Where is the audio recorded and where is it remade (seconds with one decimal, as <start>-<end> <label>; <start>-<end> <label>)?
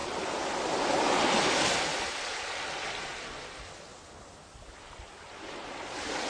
0.0-6.3 recorded